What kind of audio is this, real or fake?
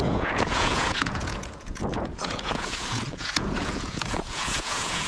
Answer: fake